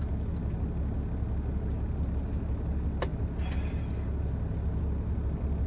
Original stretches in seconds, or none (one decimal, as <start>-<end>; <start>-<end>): 0.0-5.7

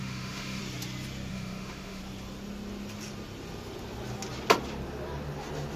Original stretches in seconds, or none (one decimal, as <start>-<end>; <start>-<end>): 0.6-1.3; 2.0-5.8

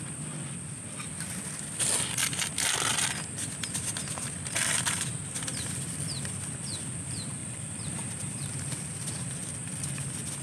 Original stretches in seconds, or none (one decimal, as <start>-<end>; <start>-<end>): 0.0-7.4; 8.5-9.4; 10.0-10.4

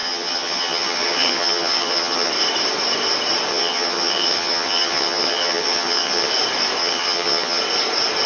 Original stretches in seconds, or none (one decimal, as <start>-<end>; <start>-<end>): 2.3-3.5; 6.3-6.8; 7.6-8.3

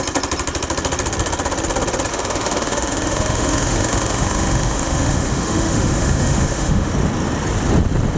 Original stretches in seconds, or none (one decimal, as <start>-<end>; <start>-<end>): 0.0-2.1; 6.9-8.2

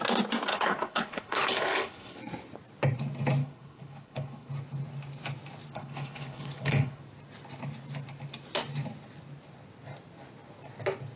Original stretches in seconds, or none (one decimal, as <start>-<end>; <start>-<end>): 0.0-0.5; 2.2-3.4; 4.5-5.7; 7.0-11.2